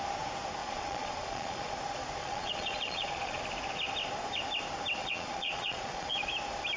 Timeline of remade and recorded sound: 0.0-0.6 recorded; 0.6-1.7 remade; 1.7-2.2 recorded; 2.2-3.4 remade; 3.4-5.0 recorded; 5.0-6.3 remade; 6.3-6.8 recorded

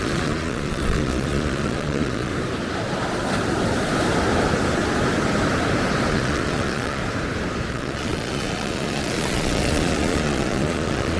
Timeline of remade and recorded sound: 0.0-2.3 remade; 2.3-6.1 recorded; 6.1-7.0 remade; 7.0-7.7 recorded; 7.7-11.2 remade

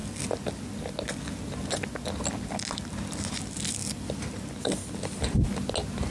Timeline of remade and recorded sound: 0.0-6.1 recorded